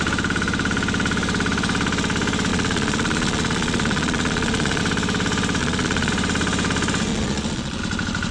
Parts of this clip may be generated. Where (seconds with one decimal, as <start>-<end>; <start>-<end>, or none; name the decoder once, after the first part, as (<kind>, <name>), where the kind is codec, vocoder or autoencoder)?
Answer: 2.5-4.8 (vocoder, Vocos); 5.6-6.1; 7.1-7.8